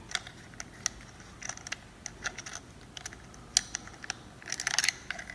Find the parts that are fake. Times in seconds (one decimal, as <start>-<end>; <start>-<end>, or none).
none